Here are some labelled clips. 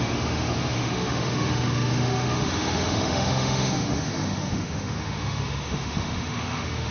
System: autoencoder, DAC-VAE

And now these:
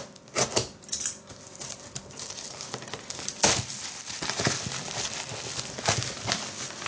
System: none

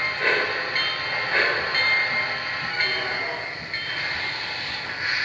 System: none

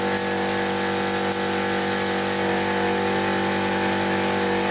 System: none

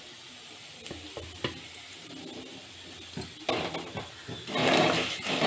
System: none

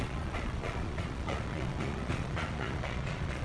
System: vocoder, Vocos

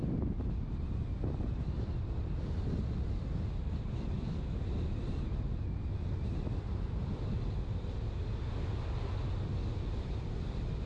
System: none